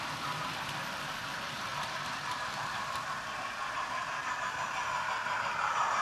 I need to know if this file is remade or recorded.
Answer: remade